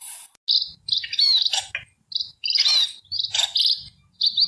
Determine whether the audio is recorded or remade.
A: recorded